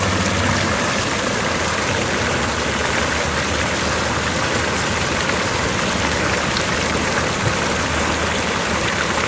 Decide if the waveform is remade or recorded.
recorded